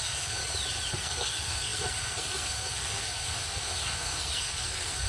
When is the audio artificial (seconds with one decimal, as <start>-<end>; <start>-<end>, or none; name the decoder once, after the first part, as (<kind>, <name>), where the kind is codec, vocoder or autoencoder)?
0.0-0.4 (codec, SNAC); 0.9-5.1